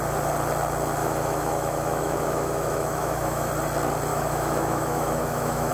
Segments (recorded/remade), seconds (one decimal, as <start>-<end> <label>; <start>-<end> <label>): 0.0-1.0 recorded; 1.0-3.5 remade; 3.5-4.1 recorded; 4.1-5.7 remade